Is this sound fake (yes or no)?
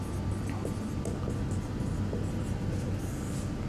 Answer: no